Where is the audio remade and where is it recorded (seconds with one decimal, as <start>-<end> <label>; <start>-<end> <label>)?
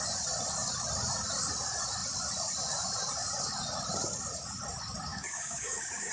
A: 0.0-5.1 recorded; 5.1-6.1 remade